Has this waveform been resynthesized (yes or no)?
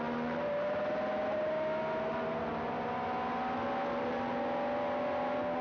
no